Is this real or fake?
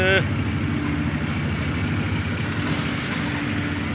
real